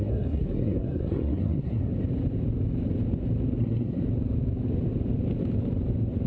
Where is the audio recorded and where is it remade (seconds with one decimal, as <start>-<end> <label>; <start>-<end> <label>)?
0.0-1.9 remade; 1.9-3.6 recorded; 3.6-4.0 remade; 4.0-6.3 recorded